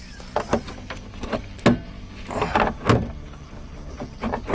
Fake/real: real